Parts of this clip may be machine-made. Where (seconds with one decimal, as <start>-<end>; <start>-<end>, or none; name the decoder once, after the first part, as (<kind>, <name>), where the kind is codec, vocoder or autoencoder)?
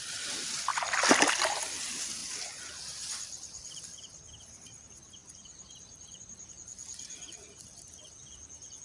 5.2-6.5 (vocoder, BigVGAN v2)